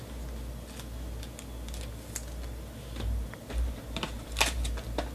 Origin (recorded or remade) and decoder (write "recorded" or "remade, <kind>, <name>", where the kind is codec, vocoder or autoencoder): recorded